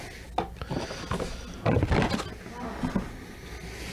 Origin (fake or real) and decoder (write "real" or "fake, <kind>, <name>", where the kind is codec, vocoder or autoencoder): real